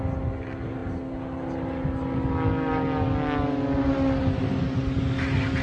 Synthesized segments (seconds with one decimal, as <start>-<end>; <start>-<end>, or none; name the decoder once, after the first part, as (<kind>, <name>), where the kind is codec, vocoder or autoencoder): none